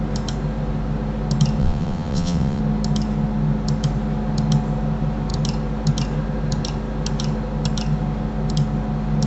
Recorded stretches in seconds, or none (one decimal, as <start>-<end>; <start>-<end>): 0.0-1.6; 2.6-9.3